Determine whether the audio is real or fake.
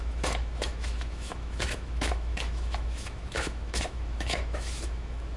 fake